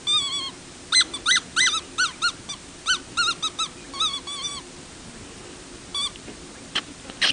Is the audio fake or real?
real